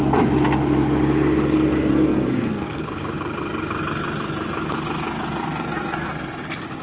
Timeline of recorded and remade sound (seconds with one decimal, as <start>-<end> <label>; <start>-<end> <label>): 0.0-1.9 recorded; 1.9-2.8 remade; 2.8-5.4 recorded; 5.4-6.1 remade; 6.1-6.8 recorded